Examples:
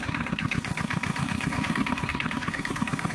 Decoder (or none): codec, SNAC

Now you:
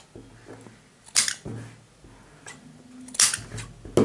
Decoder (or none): none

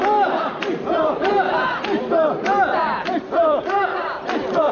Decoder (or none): vocoder, BigVGAN v2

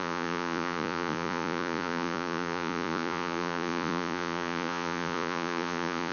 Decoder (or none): vocoder, Vocos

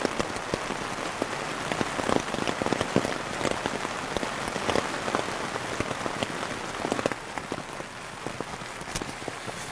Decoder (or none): none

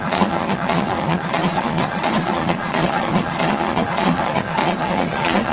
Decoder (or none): vocoder, Vocos